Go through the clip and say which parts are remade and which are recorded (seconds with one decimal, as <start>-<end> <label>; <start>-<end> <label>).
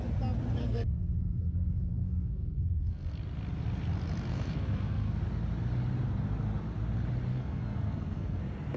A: 0.0-0.6 recorded; 0.6-3.1 remade; 3.1-4.3 recorded; 4.3-5.2 remade; 5.2-7.3 recorded; 7.3-8.4 remade; 8.4-8.8 recorded